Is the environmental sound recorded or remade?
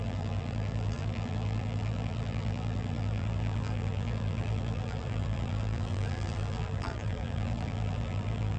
remade